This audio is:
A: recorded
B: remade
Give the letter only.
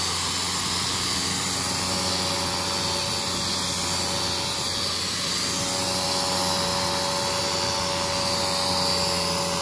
A